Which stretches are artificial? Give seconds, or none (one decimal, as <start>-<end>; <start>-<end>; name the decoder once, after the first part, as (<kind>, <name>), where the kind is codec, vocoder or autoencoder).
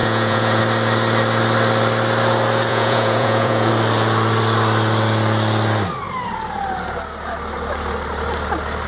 0.0-0.6 (vocoder, Vocos); 2.7-3.7